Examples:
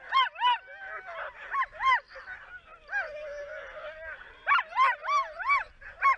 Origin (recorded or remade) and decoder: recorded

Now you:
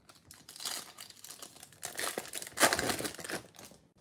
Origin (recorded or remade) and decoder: recorded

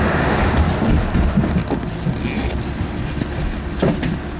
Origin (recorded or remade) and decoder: recorded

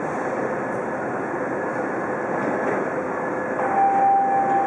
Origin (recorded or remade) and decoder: recorded